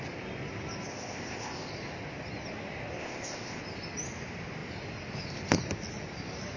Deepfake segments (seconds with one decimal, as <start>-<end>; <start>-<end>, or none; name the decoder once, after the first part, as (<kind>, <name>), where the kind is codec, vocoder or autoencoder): 0.9-1.7 (codec, ZipCodec); 3.0-3.6